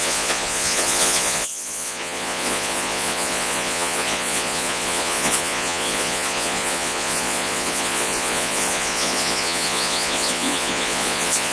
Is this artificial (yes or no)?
yes